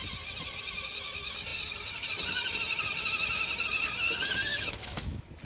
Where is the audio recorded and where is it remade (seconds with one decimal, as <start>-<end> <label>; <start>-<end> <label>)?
0.0-4.5 recorded; 4.5-5.4 remade